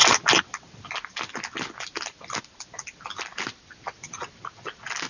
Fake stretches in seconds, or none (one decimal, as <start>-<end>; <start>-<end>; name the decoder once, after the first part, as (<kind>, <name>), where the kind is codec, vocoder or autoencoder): none